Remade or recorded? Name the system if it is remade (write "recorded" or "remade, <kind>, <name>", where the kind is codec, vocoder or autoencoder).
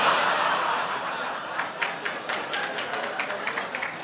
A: recorded